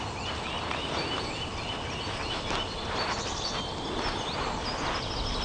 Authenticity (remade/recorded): recorded